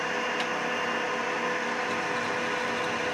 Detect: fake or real real